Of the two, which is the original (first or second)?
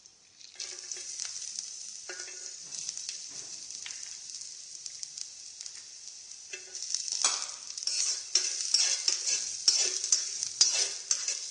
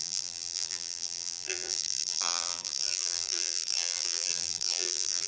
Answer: first